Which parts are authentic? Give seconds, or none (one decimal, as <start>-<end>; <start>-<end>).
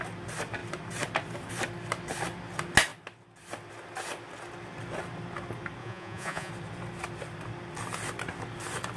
0.0-5.8; 6.5-9.0